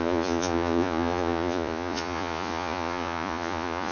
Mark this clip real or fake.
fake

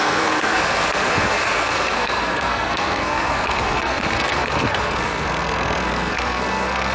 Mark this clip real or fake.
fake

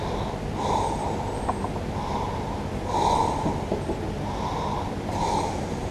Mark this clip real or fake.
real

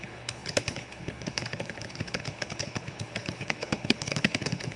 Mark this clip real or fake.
fake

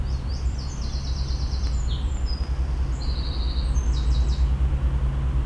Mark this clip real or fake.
real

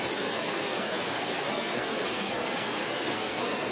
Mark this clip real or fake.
fake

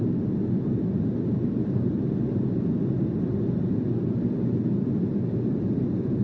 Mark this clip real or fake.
real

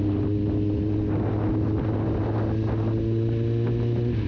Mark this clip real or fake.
real